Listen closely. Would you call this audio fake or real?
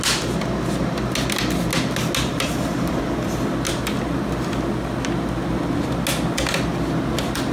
real